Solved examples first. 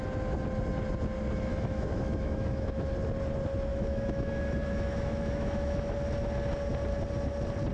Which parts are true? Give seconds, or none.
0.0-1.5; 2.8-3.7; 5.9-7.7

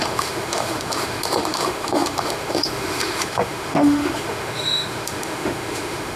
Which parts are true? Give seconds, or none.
none

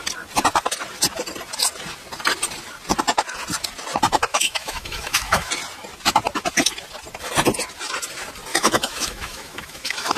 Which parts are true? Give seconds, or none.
0.0-4.3; 5.5-8.5

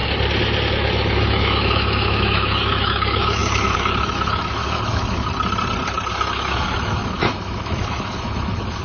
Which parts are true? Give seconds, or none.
0.0-0.7; 5.3-6.1

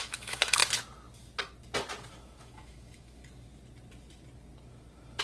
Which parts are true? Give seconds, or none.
0.6-2.1; 3.2-5.2

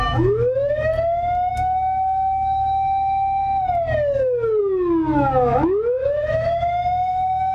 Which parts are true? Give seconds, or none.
0.9-1.5; 3.4-4.6

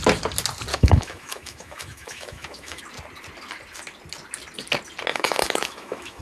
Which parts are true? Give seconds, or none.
0.0-0.7; 2.8-5.1